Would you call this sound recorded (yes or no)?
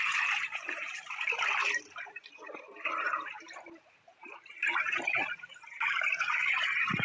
no